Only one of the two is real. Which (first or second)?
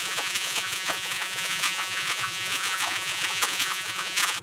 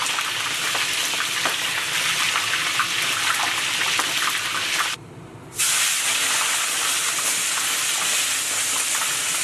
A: second